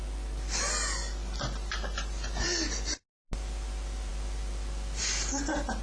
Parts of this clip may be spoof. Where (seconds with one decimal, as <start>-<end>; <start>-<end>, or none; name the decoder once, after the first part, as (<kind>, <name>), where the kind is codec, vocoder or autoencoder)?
none